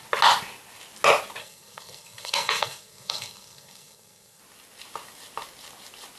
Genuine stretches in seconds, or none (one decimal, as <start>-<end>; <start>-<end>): 0.0-1.4; 4.4-6.2